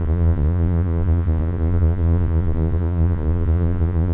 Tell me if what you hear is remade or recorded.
remade